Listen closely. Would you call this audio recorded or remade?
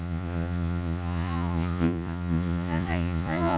remade